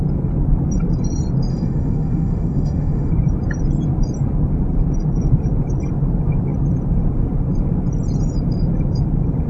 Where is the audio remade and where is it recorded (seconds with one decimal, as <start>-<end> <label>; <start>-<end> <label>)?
0.0-1.5 recorded; 1.5-3.1 remade; 3.1-9.5 recorded